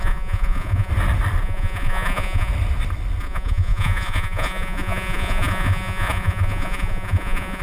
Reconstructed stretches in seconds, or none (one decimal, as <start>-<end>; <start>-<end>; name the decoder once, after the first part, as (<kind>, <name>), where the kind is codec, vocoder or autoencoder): 0.0-0.9 (vocoder, Vocos); 1.4-2.5; 3.2-7.6